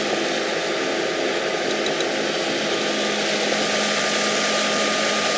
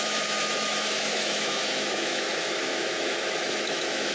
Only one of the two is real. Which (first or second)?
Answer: first